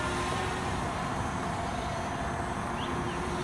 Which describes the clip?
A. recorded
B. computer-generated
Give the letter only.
A